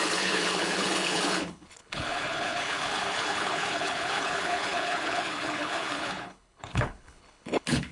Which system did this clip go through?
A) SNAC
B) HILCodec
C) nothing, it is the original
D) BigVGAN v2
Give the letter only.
B